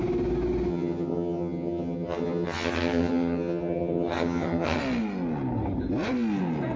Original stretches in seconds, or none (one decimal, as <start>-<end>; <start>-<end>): 0.0-0.7; 4.8-6.8